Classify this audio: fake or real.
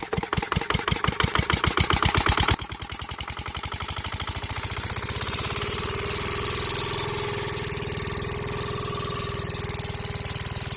real